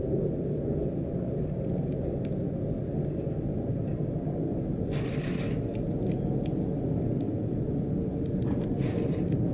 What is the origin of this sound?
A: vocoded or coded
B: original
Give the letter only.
B